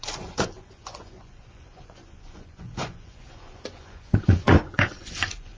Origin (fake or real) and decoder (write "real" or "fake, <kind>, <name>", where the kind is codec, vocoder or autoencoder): fake, vocoder, Vocos